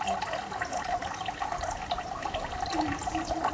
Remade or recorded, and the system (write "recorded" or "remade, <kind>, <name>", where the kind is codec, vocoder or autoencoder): recorded